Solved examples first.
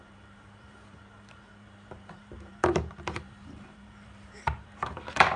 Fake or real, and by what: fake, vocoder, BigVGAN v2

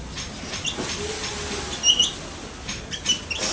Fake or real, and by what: real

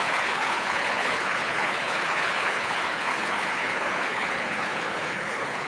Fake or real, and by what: fake, codec, HILCodec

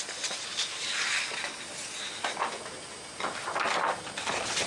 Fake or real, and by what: real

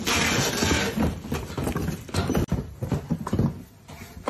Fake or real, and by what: real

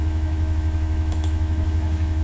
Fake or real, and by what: fake, autoencoder, DAC-VAE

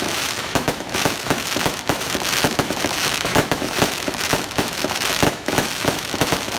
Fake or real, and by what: fake, autoencoder, DAC-VAE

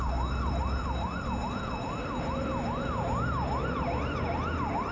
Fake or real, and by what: real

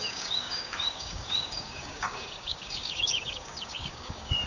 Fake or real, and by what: fake, codec, DAC